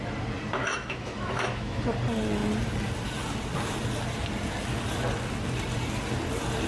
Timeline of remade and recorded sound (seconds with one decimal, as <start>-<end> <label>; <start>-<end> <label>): 0.0-0.6 recorded; 0.6-1.8 remade; 1.8-6.7 recorded